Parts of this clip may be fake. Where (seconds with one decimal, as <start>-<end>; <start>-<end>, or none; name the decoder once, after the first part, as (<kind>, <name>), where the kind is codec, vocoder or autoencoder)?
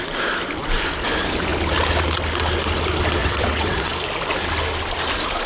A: 3.2-3.9 (vocoder, WaveNeXt)